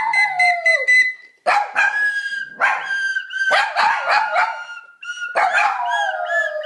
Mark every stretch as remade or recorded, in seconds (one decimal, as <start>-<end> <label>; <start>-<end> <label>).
0.0-1.2 recorded; 1.2-1.9 remade; 1.9-2.3 recorded; 2.3-4.4 remade; 4.4-6.7 recorded